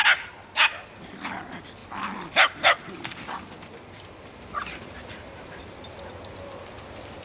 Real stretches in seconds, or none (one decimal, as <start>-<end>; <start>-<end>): 0.0-7.2